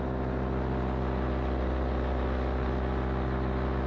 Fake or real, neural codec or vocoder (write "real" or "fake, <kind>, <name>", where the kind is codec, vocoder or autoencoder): real